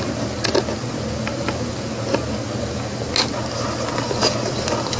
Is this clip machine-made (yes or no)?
no